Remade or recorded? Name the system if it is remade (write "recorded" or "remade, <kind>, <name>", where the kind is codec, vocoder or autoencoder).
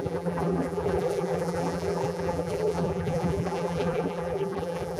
remade, vocoder, BigVGAN v2